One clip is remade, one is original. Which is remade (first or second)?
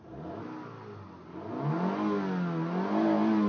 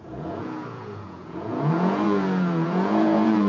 second